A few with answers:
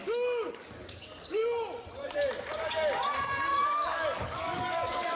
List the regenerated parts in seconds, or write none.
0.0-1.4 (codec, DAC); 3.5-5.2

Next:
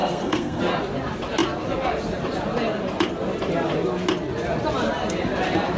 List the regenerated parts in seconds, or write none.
0.0-0.6 (codec, SNAC)

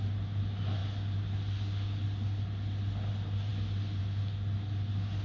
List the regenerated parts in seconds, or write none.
none

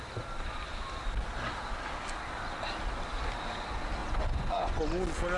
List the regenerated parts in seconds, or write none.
4.0-4.8 (vocoder, Vocos)

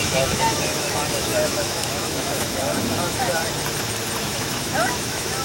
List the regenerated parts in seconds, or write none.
0.0-3.4 (autoencoder, DAC-VAE); 4.2-5.4

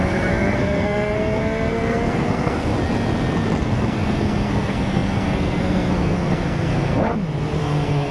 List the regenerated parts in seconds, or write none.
0.0-2.7 (codec, SNAC); 3.6-7.1; 7.6-8.1

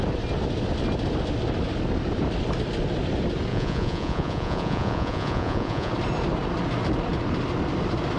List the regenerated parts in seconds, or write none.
3.5-5.9 (vocoder, Vocos)

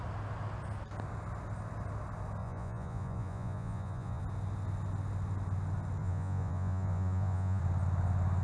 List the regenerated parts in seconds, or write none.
2.4-4.2 (vocoder, Vocos); 6.0-7.6